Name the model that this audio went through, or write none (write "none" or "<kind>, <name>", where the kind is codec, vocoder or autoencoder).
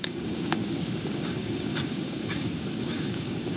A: codec, DAC